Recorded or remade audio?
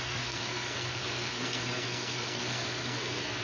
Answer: remade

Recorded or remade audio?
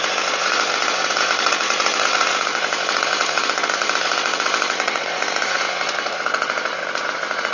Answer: remade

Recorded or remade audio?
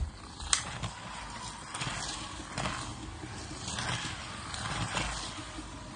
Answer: recorded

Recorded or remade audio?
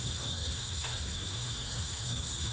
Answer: remade